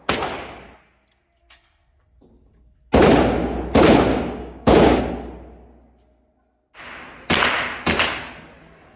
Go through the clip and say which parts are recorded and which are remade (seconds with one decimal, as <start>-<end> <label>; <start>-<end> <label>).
0.0-4.1 recorded; 4.1-5.0 remade; 5.0-9.0 recorded